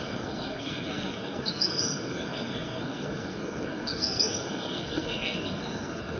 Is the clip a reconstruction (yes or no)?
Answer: yes